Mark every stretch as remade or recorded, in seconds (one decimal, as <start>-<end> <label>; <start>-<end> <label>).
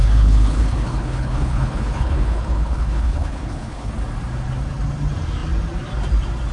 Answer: 0.0-3.9 remade; 3.9-6.5 recorded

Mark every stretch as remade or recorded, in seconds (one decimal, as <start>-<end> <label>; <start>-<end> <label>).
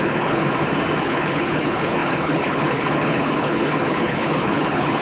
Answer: 0.0-0.4 remade; 0.4-1.0 recorded; 1.0-5.0 remade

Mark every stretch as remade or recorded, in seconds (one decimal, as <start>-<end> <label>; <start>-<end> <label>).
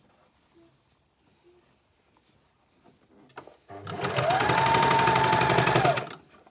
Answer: 0.0-6.5 recorded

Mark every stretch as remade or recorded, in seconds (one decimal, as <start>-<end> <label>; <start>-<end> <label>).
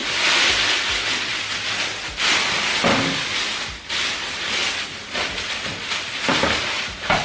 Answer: 0.0-1.0 remade; 1.0-7.2 recorded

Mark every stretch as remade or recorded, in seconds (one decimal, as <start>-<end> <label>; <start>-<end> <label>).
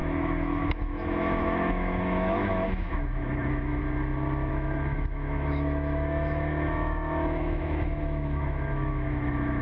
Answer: 0.0-3.8 remade; 3.8-4.5 recorded; 4.5-9.6 remade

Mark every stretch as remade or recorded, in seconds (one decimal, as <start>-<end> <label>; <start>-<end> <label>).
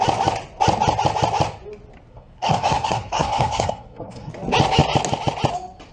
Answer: 0.0-2.1 recorded; 2.1-4.3 remade; 4.3-5.9 recorded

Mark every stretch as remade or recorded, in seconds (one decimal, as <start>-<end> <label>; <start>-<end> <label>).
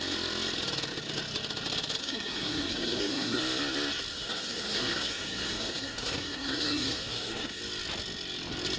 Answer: 0.0-2.0 recorded; 2.0-3.4 remade; 3.4-4.1 recorded; 4.1-7.6 remade; 7.6-8.8 recorded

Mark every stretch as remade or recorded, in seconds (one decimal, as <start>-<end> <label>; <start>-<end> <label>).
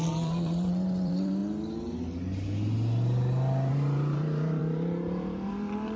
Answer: 0.0-1.4 remade; 1.4-3.7 recorded; 3.7-6.0 remade